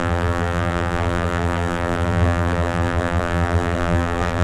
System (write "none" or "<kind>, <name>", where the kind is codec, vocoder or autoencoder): vocoder, BigVGAN v2